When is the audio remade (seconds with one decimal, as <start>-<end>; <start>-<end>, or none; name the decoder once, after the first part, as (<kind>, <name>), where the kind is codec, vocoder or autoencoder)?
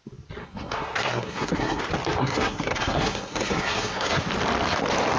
0.4-1.8 (codec, SNAC); 2.2-4.2